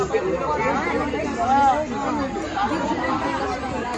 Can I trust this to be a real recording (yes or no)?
yes